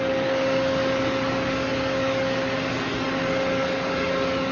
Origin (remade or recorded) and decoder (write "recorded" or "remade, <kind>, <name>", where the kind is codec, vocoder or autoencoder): remade, codec, DAC